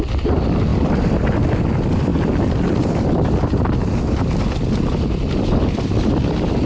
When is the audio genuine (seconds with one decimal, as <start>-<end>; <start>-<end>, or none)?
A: 0.0-0.7; 1.7-2.1; 6.1-6.7